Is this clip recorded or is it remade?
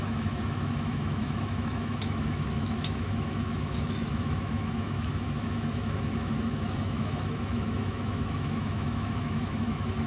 remade